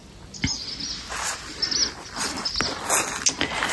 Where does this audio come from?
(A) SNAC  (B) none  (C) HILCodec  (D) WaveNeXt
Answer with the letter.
B